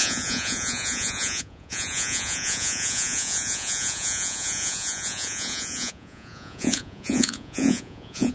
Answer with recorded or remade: remade